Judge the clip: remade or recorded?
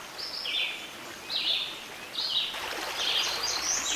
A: recorded